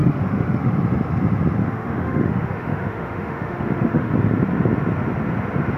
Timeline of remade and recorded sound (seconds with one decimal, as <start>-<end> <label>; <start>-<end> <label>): 0.0-0.6 remade; 0.6-1.6 recorded; 1.6-4.1 remade; 4.1-5.8 recorded